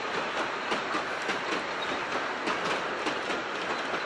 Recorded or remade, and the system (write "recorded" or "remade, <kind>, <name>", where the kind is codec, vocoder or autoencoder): recorded